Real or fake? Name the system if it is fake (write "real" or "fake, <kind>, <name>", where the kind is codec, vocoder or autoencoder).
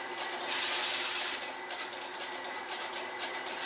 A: real